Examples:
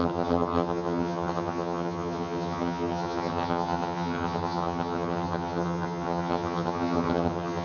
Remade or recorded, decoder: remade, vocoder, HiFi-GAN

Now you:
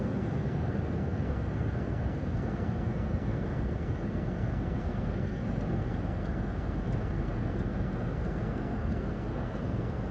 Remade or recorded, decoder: remade, codec, SNAC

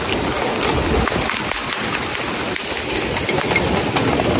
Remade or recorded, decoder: recorded